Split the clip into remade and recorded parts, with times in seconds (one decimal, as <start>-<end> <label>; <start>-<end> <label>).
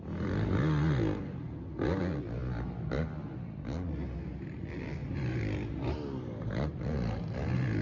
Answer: 0.0-5.0 recorded; 5.0-5.9 remade; 5.9-7.8 recorded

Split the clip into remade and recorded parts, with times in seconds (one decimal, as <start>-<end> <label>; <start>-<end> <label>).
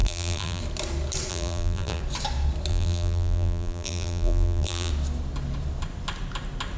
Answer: 0.0-0.6 remade; 0.6-1.3 recorded; 1.3-2.0 remade; 2.0-2.7 recorded; 2.7-4.9 remade; 4.9-6.8 recorded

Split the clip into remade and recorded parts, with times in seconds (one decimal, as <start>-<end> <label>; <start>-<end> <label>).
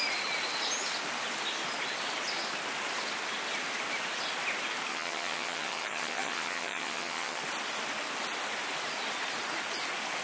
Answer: 0.0-4.9 recorded; 4.9-7.4 remade; 7.4-10.2 recorded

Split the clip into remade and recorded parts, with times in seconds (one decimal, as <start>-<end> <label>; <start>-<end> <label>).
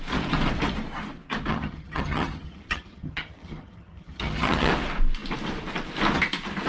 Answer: 0.0-1.5 recorded; 1.5-4.7 remade; 4.7-6.7 recorded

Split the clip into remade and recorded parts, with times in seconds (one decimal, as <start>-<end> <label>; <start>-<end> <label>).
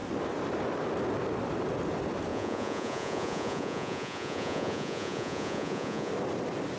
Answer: 0.0-2.3 recorded; 2.3-6.1 remade; 6.1-6.8 recorded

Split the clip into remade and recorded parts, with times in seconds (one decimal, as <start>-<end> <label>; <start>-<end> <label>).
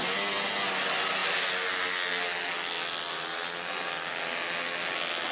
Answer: 0.0-5.3 recorded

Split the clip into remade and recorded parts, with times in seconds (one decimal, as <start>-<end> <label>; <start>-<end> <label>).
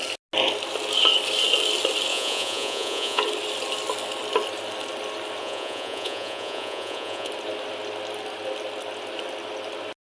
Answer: 0.0-2.1 recorded; 2.1-3.2 remade; 3.2-5.4 recorded; 5.4-7.3 remade; 7.3-10.0 recorded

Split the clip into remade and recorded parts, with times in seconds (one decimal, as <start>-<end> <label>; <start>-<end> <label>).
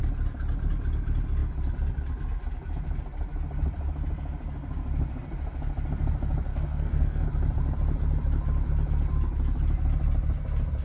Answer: 0.0-6.5 recorded; 6.5-7.2 remade; 7.2-10.8 recorded